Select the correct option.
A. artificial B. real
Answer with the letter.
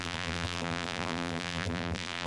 A